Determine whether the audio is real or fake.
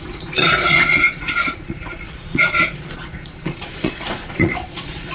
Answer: fake